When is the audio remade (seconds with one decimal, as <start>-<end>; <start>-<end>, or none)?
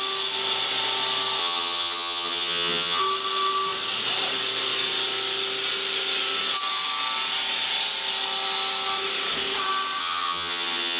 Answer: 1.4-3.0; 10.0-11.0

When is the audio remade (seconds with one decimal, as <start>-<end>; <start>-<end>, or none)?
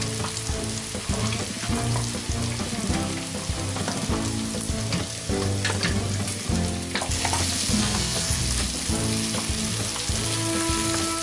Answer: 7.8-8.4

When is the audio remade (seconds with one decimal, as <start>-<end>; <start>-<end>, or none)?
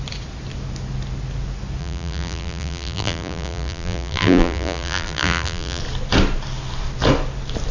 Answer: 1.8-5.8